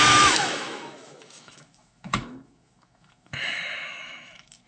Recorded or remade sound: remade